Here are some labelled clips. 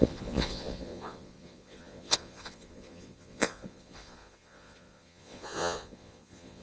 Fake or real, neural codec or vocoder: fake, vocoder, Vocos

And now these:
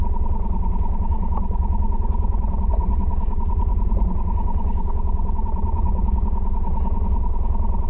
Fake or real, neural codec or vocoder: real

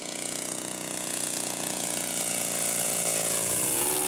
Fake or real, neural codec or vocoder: fake, vocoder, Vocos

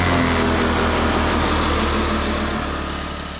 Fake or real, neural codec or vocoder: real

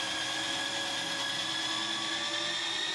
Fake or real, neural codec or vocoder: real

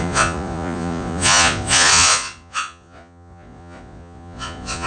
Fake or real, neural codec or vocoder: fake, vocoder, Vocos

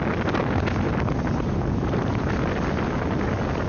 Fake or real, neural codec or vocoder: real